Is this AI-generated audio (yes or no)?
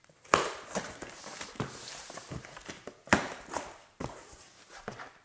yes